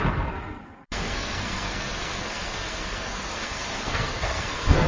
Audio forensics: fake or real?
fake